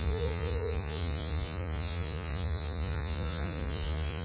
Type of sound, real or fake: fake